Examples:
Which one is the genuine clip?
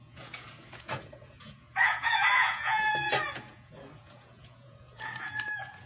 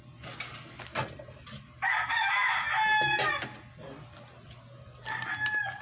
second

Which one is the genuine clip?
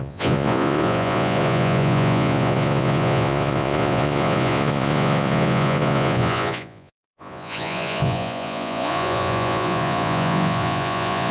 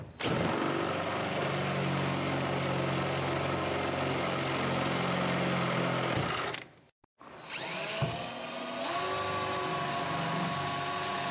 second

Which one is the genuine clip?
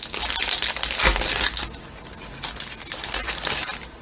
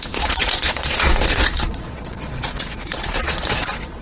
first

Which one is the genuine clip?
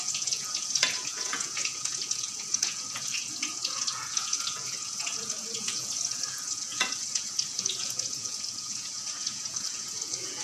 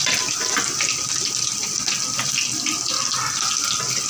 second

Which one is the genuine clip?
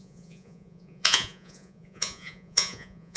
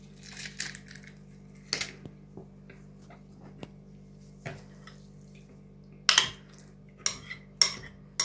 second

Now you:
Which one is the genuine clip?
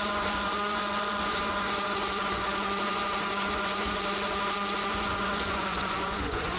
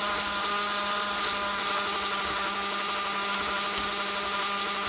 second